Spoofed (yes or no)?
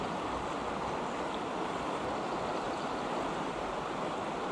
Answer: no